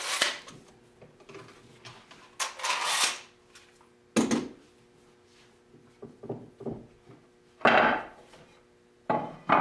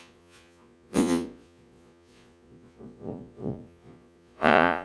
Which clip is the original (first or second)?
first